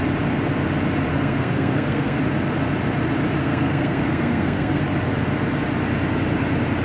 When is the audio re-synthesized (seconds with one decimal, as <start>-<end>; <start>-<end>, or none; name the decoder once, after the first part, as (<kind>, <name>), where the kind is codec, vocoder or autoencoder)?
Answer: 1.1-2.2 (codec, SNAC); 3.4-4.8